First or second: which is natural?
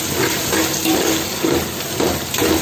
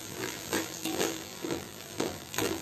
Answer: first